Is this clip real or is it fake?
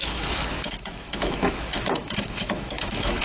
fake